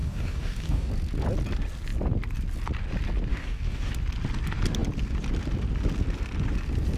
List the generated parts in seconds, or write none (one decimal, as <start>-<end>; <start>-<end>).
0.0-0.9; 3.3-3.9